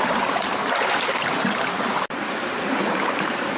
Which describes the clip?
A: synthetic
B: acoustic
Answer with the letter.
B